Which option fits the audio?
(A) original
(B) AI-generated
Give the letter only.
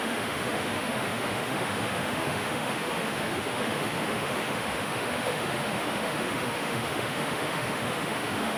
B